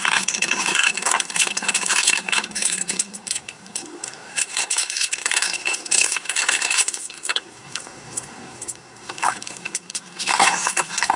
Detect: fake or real fake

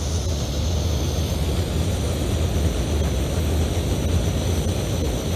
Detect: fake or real real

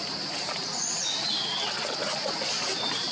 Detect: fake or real real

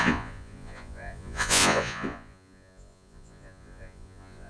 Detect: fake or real fake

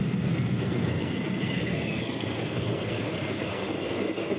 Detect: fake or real fake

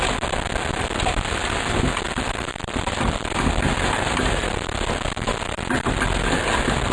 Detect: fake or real real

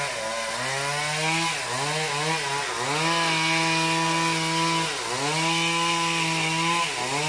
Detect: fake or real real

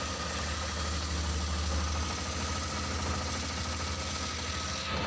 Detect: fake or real real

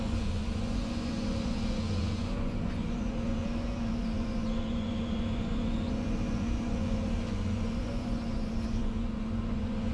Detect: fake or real fake